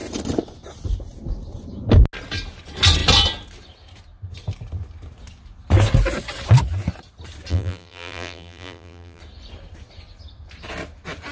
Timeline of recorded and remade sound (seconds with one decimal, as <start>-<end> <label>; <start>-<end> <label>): 0.0-7.5 recorded; 7.5-9.2 remade; 9.2-11.3 recorded